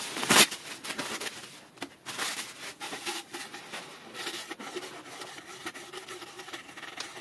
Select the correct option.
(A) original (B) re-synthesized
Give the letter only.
A